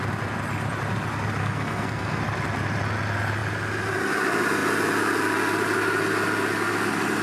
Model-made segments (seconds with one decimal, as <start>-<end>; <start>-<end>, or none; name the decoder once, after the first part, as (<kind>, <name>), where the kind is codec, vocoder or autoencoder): 1.4-2.2 (codec, SNAC)